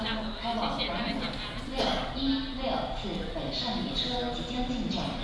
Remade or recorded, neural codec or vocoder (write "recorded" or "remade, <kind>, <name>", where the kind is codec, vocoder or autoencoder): recorded